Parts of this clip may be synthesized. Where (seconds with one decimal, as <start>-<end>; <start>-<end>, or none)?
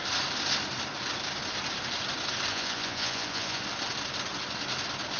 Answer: 2.5-3.6